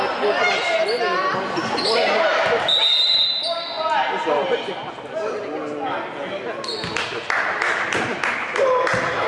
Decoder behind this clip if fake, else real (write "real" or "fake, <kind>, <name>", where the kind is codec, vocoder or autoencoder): real